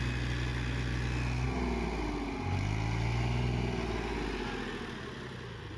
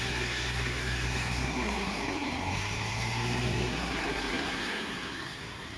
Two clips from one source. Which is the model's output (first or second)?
second